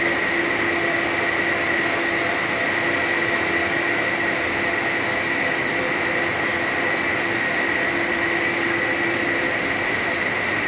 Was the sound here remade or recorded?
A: recorded